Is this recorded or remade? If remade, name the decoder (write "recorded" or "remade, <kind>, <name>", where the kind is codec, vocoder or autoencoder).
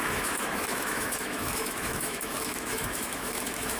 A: remade, autoencoder, DAC-VAE